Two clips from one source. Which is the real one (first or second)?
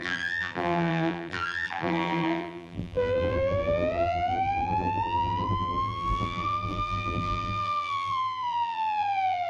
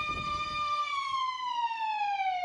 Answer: second